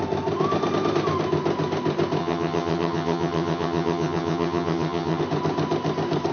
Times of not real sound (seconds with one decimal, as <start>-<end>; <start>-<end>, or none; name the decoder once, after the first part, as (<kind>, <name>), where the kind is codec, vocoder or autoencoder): 2.2-5.2 (vocoder, HiFi-GAN)